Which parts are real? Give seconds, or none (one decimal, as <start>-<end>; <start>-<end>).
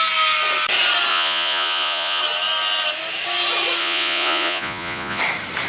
0.0-1.1; 2.2-3.8; 5.2-5.7